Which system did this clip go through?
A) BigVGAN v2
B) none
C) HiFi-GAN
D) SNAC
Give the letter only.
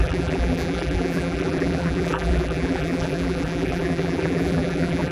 A